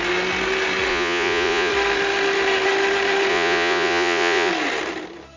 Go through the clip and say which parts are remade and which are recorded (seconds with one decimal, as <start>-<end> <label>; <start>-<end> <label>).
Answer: 0.0-0.9 recorded; 0.9-1.7 remade; 1.7-3.3 recorded; 3.3-4.5 remade; 4.5-5.4 recorded